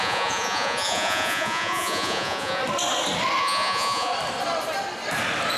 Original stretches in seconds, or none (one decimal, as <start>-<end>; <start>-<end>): 2.6-3.4; 4.1-5.6